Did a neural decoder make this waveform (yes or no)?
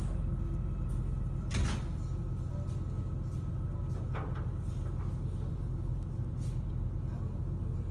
no